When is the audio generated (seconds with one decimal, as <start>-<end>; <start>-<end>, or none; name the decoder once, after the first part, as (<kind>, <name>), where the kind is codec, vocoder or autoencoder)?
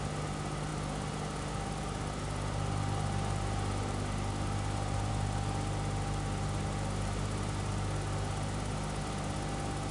none